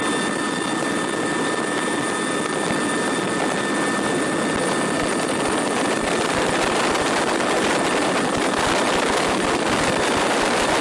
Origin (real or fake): real